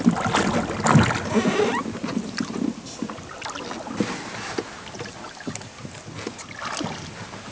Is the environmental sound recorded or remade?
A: recorded